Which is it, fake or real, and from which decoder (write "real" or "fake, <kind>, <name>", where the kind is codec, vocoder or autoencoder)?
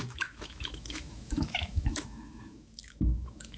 fake, autoencoder, DAC-VAE